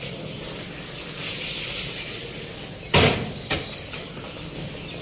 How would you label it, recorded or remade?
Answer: recorded